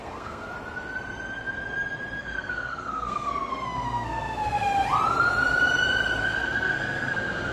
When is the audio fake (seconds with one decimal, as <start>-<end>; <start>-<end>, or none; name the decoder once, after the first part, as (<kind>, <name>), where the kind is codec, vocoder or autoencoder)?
0.0-0.5 (codec, SNAC); 2.2-4.7; 6.2-7.5